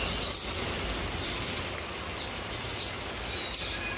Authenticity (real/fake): real